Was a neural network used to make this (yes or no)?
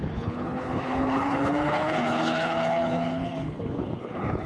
yes